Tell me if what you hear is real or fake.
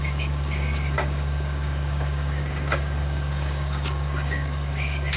fake